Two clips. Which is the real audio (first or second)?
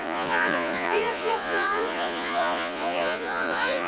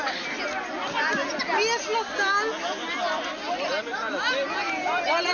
second